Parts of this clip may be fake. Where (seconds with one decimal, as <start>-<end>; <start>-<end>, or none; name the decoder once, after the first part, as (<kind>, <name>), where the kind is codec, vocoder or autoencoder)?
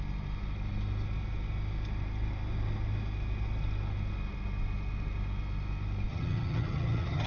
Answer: 6.1-7.3 (vocoder, HiFi-GAN)